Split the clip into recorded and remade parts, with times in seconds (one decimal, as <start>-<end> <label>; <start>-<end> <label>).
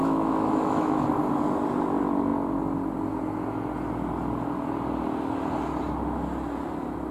0.0-1.0 remade; 1.0-7.1 recorded